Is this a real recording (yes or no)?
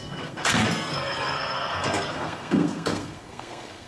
no